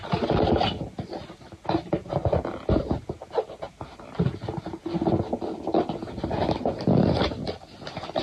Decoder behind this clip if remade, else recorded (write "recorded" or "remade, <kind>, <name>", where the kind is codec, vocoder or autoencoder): recorded